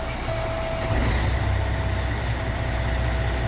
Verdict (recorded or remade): recorded